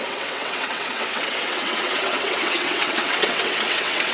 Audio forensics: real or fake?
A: fake